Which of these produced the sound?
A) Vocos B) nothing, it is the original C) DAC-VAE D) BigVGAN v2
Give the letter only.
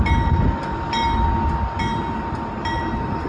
B